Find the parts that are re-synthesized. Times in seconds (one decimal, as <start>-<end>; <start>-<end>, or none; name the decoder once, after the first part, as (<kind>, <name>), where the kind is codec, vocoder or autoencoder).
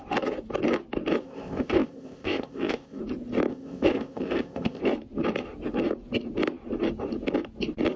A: 1.2-3.0 (codec, ZipCodec); 3.5-4.8